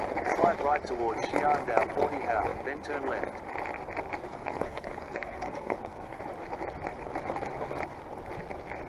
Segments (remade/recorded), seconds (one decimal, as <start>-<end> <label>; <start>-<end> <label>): 0.0-4.3 recorded; 4.3-6.2 remade; 6.2-8.9 recorded